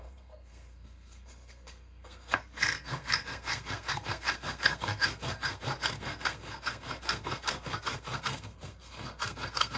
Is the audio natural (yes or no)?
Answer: no